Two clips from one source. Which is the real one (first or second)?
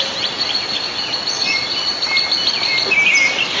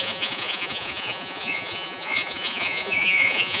first